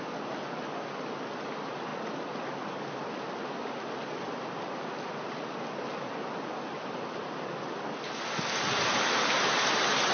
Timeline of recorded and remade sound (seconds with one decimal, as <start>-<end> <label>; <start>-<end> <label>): 0.0-10.1 recorded